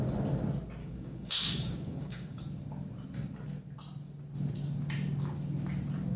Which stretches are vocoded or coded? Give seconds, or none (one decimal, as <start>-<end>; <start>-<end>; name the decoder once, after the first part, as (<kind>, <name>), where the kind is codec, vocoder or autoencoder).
0.8-2.4 (codec, DAC)